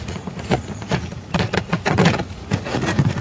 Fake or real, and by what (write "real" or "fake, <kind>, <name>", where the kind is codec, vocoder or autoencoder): fake, vocoder, Vocos